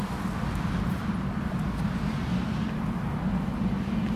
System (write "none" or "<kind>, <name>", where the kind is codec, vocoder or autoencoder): none